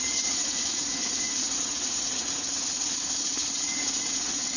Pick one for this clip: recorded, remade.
remade